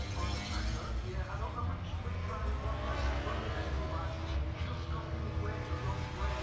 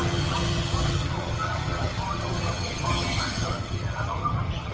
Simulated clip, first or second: second